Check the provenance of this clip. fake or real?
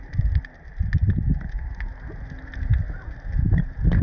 real